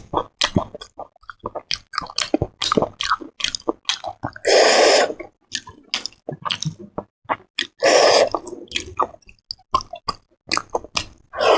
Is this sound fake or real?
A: real